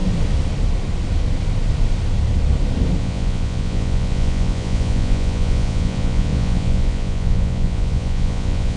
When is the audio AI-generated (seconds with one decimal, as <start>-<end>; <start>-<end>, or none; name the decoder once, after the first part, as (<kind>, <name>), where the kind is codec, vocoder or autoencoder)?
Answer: 3.0-8.8 (vocoder, Vocos)